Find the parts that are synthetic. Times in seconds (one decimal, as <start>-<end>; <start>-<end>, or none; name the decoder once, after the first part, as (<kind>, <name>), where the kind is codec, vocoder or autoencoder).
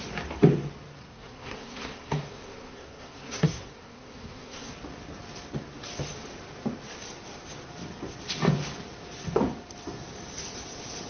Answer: 1.0-4.7 (codec, SNAC)